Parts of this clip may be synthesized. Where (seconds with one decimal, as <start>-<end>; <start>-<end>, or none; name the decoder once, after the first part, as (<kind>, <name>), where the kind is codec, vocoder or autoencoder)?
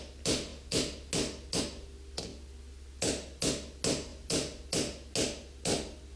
none